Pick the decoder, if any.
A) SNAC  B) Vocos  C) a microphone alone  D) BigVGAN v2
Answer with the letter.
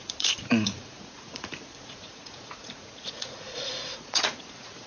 B